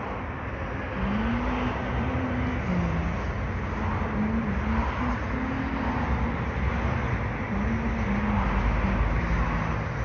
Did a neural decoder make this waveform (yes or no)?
no